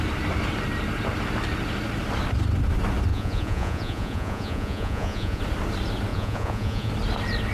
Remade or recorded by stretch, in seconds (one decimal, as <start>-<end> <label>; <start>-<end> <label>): 0.0-3.1 recorded; 3.1-5.4 remade; 5.4-6.1 recorded; 6.1-6.9 remade; 6.9-7.5 recorded